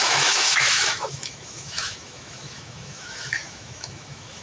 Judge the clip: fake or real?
fake